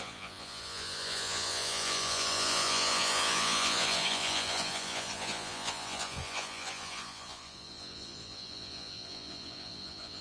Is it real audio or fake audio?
fake